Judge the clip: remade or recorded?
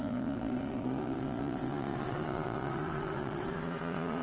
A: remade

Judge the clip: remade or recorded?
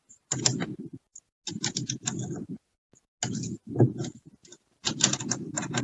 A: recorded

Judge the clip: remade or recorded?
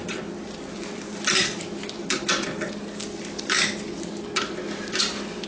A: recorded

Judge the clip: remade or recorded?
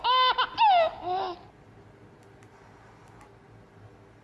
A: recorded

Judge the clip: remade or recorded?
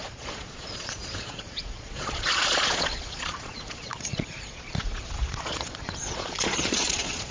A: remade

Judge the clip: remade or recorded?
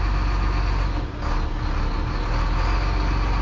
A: recorded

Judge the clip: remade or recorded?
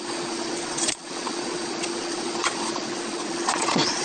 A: remade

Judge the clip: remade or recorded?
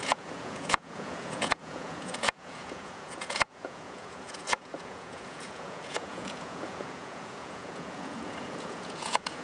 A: remade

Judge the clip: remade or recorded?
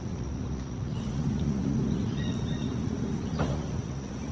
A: remade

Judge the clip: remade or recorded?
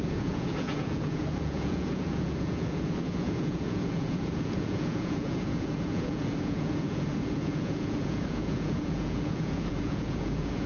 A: remade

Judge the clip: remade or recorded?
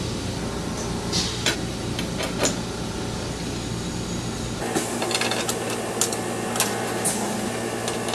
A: recorded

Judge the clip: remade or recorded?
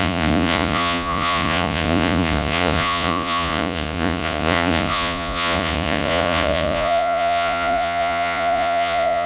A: remade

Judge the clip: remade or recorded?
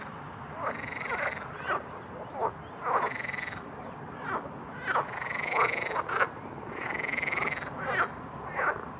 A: recorded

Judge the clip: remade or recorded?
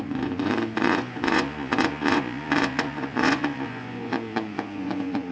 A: remade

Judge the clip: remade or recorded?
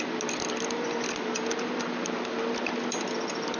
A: recorded